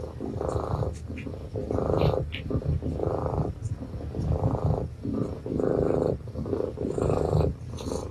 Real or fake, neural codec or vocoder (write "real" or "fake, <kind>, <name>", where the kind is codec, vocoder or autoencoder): real